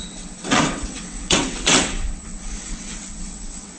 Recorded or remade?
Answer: remade